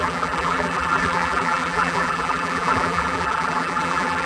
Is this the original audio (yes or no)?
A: no